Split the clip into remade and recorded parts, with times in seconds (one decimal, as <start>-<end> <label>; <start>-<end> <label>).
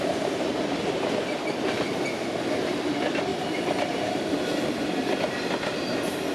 0.0-3.3 recorded; 3.3-5.3 remade; 5.3-6.3 recorded